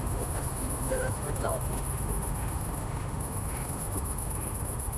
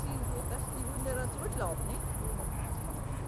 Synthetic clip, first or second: first